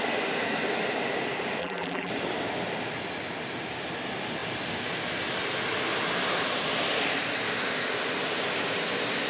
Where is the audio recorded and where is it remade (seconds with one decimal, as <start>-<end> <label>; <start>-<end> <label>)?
0.0-1.6 recorded; 1.6-2.1 remade; 2.1-9.3 recorded